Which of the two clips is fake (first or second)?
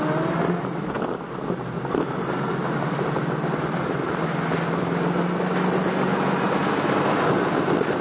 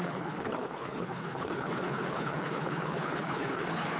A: second